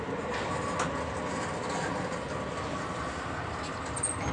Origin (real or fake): real